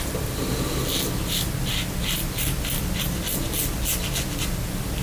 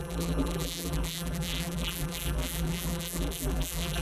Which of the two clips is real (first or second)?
first